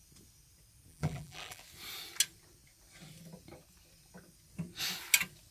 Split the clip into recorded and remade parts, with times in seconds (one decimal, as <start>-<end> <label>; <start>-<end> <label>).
0.0-0.9 recorded; 0.9-1.6 remade; 1.6-5.5 recorded